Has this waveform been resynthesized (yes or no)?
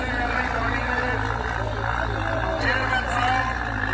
no